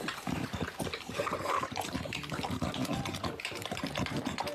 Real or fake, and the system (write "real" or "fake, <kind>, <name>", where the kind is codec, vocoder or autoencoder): fake, vocoder, BigVGAN v2